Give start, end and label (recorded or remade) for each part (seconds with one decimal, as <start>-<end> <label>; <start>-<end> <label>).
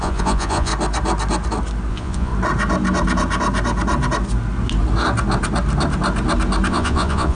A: 0.0-0.7 remade; 0.7-1.9 recorded; 1.9-2.3 remade; 2.3-6.7 recorded; 6.7-7.3 remade